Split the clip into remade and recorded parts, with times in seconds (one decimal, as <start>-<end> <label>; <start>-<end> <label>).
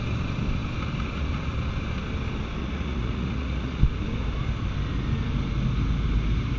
0.0-2.6 recorded; 2.6-3.8 remade; 3.8-6.6 recorded